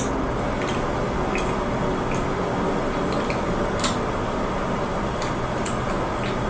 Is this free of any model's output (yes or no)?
yes